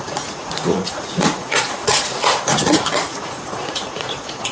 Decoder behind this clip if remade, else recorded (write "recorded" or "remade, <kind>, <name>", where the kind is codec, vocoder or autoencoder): remade, vocoder, Vocos